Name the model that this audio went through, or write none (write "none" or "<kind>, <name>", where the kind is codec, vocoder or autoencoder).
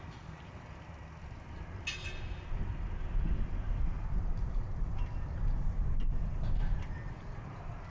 none